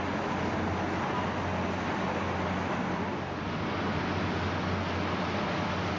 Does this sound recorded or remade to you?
recorded